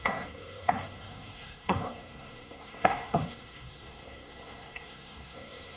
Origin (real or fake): fake